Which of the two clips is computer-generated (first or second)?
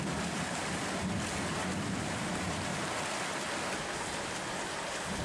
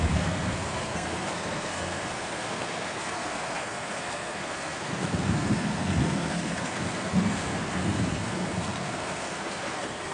second